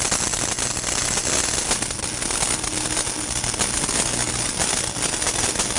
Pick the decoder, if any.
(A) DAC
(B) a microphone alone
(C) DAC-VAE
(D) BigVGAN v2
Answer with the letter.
B